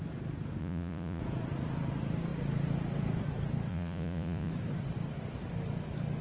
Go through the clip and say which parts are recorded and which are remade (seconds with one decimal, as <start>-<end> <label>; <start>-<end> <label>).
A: 0.0-0.6 recorded; 0.6-1.2 remade; 1.2-3.7 recorded; 3.7-4.5 remade; 4.5-6.2 recorded